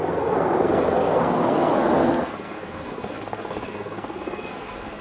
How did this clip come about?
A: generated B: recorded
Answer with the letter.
A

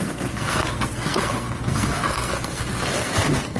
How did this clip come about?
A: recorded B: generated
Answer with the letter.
B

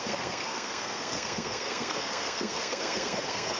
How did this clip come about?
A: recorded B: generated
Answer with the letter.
B